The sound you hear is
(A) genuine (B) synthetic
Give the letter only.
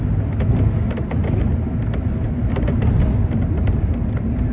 A